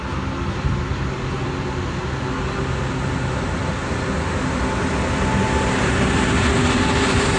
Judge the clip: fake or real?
real